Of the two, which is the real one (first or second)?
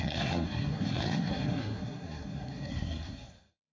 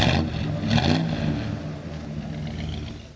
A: second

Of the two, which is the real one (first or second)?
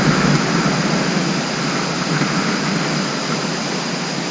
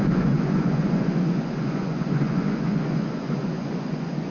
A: first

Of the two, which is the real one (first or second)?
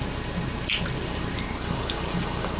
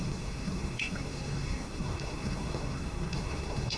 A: first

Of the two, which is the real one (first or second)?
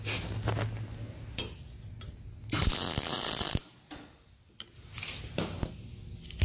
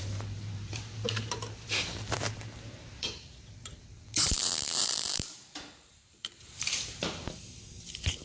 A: first